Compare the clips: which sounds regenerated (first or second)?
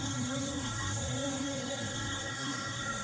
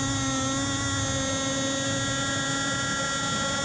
first